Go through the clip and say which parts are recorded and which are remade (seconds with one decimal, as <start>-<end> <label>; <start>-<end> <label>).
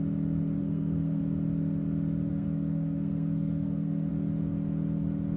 0.0-0.6 recorded; 0.6-1.2 remade; 1.2-2.3 recorded; 2.3-4.1 remade; 4.1-5.4 recorded